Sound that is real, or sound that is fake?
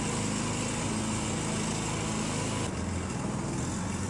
real